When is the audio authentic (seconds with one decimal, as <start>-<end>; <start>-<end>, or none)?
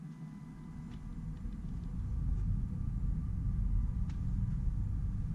0.0-5.3